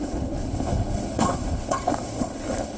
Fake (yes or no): yes